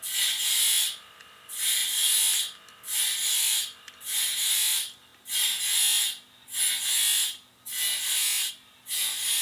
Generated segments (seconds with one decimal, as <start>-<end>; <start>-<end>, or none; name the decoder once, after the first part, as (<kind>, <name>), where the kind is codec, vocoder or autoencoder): 0.0-1.8 (vocoder, BigVGAN v2); 3.4-5.1; 8.5-9.4